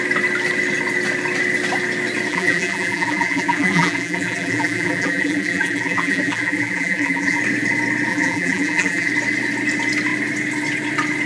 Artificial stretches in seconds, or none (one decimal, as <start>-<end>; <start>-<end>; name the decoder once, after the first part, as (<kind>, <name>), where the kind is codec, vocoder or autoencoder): 2.3-7.4 (vocoder, BigVGAN v2); 8.1-9.1